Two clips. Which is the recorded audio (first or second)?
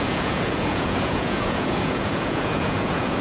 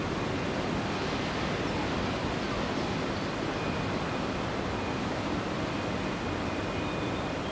second